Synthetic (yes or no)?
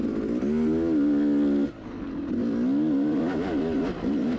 no